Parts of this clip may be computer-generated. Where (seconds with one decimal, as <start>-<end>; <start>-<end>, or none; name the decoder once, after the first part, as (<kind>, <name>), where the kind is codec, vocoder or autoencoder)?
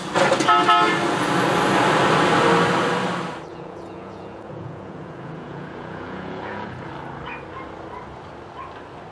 3.5-6.9 (vocoder, Vocos)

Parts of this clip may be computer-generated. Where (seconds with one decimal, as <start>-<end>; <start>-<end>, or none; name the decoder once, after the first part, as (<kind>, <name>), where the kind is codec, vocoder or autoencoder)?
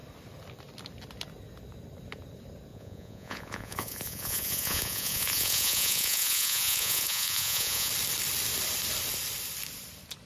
2.7-7.9 (vocoder, Vocos)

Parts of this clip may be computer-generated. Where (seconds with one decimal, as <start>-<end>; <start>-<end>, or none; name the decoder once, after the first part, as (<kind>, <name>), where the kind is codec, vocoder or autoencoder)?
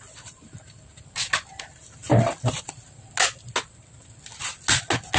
none